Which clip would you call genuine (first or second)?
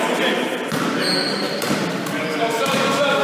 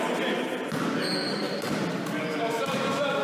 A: second